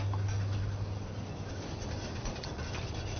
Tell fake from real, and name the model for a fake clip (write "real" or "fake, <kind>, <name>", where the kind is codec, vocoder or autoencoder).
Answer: real